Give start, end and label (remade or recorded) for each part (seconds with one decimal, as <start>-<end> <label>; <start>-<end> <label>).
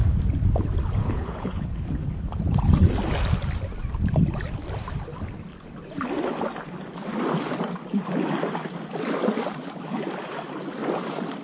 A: 0.0-1.0 recorded; 1.0-1.9 remade; 1.9-11.4 recorded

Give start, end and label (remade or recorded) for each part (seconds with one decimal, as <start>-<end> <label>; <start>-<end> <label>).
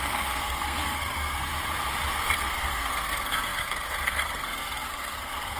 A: 0.0-1.5 remade; 1.5-2.1 recorded; 2.1-5.6 remade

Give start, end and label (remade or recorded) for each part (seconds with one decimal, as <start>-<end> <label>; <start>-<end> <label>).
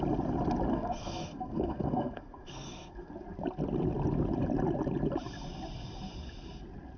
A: 0.0-0.7 recorded; 0.7-3.1 remade; 3.1-7.0 recorded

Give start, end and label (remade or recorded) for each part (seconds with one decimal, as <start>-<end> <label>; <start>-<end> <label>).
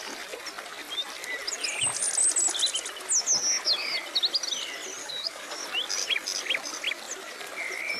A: 0.0-5.0 recorded; 5.0-5.6 remade; 5.6-8.0 recorded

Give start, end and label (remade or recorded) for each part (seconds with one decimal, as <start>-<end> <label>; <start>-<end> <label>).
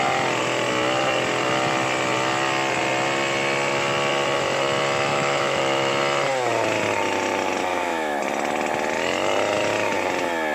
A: 0.0-5.1 recorded; 5.1-5.9 remade; 5.9-7.7 recorded; 7.7-8.2 remade; 8.2-10.5 recorded